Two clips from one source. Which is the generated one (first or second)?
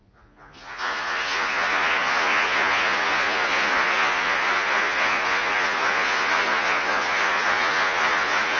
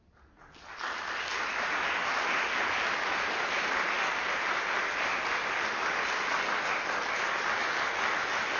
first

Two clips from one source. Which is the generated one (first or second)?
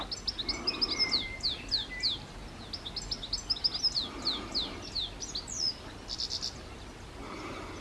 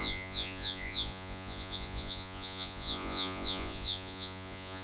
second